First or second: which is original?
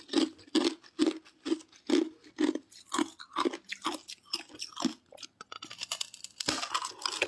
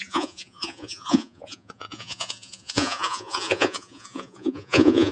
first